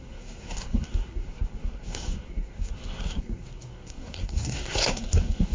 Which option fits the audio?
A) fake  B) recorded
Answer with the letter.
A